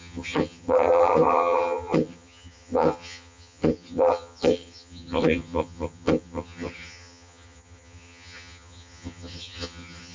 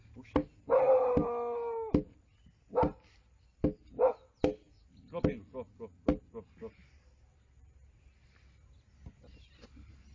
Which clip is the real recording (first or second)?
second